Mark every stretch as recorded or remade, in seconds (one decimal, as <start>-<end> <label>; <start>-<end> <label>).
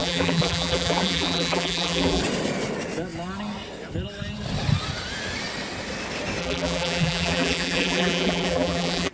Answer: 0.0-2.2 remade; 2.2-6.4 recorded; 6.4-9.1 remade